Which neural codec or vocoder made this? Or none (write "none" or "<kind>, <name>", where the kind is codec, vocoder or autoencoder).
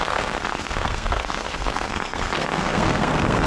codec, SNAC